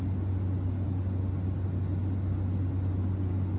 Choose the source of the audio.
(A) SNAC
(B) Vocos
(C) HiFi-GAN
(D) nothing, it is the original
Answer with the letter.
D